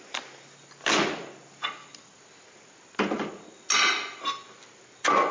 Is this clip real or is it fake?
real